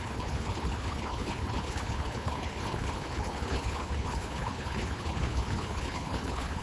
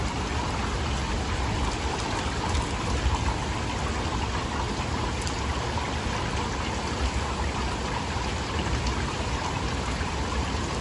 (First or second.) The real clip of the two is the second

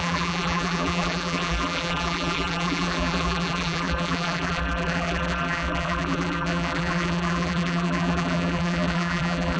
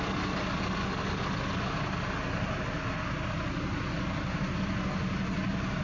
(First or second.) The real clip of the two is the second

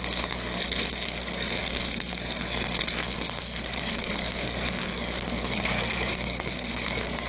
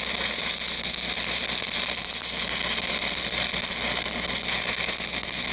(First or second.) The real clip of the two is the second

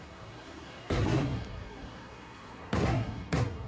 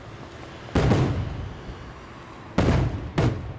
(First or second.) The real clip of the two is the second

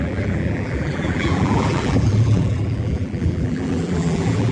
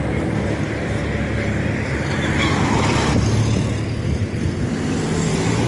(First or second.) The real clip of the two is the second